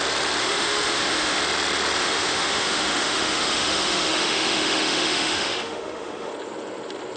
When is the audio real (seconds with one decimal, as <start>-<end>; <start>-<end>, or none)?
0.0-0.4; 1.4-2.0; 6.3-7.2